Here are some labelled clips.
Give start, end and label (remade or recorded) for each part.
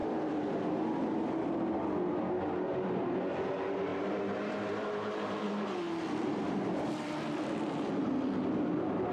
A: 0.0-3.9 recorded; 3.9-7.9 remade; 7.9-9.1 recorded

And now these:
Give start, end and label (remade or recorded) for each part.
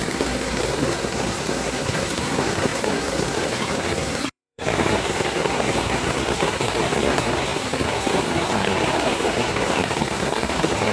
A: 0.0-10.9 remade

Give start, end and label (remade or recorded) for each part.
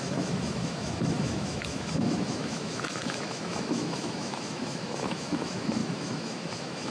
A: 0.0-6.9 remade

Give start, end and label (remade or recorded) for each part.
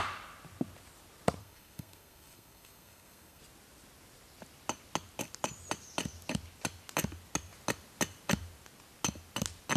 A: 0.0-1.4 recorded; 1.4-3.4 remade; 3.4-9.8 recorded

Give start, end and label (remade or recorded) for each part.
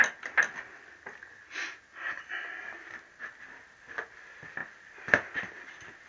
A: 0.0-4.6 recorded; 4.6-5.5 remade; 5.5-6.1 recorded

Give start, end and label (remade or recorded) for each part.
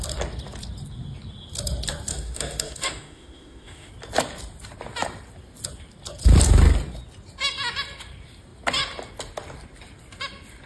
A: 0.0-2.1 recorded; 2.1-3.9 remade; 3.9-10.7 recorded